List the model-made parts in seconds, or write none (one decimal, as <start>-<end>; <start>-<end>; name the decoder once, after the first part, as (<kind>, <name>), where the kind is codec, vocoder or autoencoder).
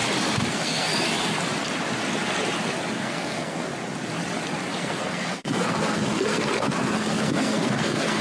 0.5-0.9 (codec, SNAC); 3.0-3.7; 4.7-8.2